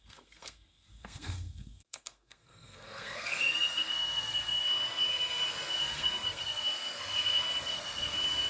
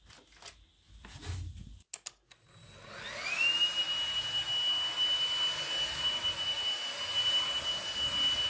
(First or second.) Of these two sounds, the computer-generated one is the first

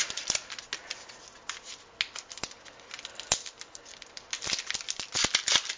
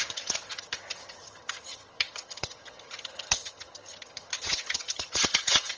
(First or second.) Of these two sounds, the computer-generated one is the second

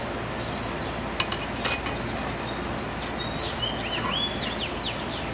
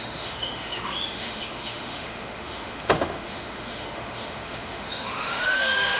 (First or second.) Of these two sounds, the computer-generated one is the second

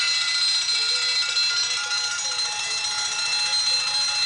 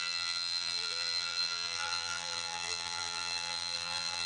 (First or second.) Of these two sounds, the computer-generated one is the second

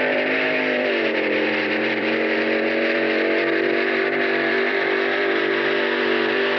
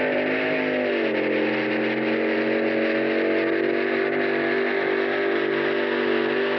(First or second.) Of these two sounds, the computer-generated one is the first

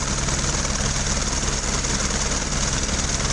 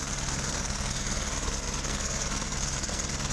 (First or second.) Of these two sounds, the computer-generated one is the second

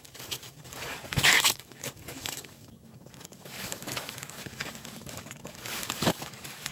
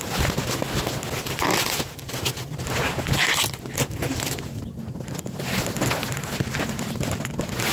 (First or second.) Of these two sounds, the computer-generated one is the first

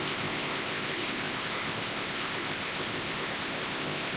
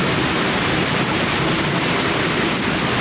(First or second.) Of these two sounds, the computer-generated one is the first